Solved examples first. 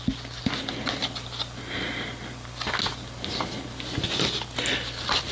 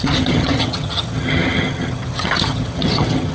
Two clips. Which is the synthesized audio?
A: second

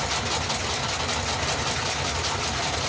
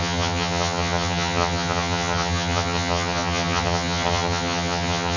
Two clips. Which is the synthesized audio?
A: second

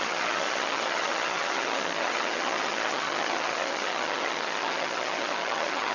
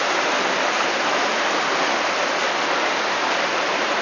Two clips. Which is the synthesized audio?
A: first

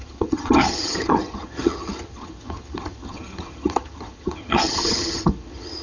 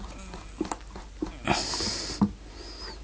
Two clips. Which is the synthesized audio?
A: first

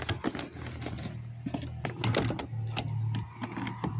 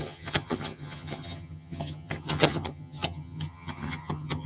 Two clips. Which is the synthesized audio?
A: second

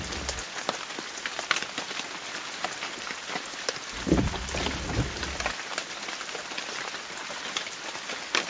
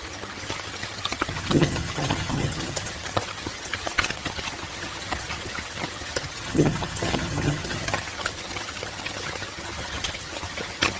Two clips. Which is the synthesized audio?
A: second